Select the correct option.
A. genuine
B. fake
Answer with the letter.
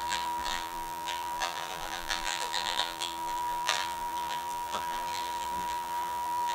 B